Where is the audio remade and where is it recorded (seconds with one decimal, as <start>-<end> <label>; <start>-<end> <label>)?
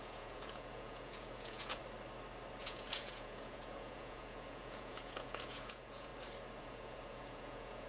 0.0-1.8 remade; 1.8-2.6 recorded; 2.6-6.1 remade; 6.1-6.6 recorded; 6.6-7.9 remade